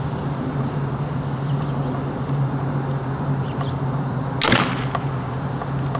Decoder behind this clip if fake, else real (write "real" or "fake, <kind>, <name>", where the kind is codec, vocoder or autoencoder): real